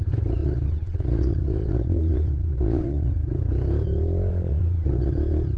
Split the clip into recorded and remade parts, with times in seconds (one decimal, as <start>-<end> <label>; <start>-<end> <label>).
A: 0.0-0.4 recorded; 0.4-3.1 remade; 3.1-4.3 recorded; 4.3-5.1 remade; 5.1-5.6 recorded